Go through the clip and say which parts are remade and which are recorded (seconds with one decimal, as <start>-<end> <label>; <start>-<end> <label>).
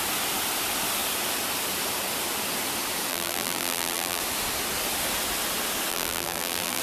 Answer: 0.0-3.1 recorded; 3.1-4.2 remade; 4.2-5.9 recorded; 5.9-6.8 remade